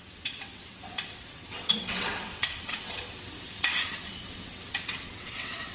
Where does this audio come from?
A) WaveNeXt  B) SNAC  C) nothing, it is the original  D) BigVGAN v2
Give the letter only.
A